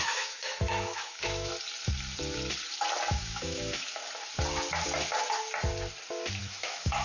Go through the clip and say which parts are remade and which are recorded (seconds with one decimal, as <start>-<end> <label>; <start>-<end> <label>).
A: 0.0-1.5 remade; 1.5-3.1 recorded; 3.1-4.0 remade; 4.0-6.4 recorded; 6.4-7.0 remade